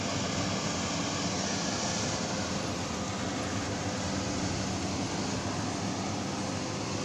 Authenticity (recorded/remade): recorded